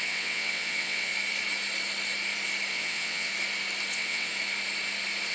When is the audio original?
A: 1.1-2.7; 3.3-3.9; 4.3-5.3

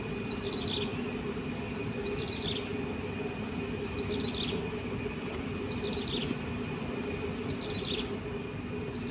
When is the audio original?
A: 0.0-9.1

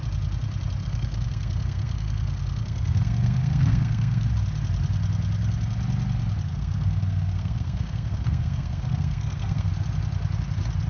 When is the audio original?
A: 0.0-0.8; 4.3-6.5; 9.7-10.9

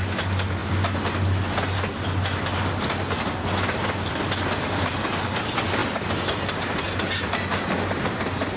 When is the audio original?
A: 0.0-8.6

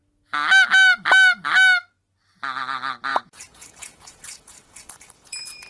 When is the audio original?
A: 0.0-3.1

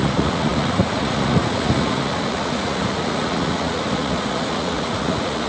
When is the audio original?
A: none

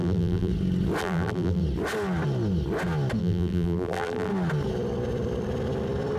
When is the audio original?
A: 0.5-1.0; 1.6-3.2; 4.3-6.2